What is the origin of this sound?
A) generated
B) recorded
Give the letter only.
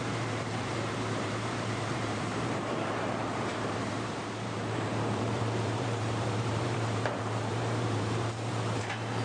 A